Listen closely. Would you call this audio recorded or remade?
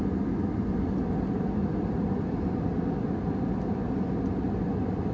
recorded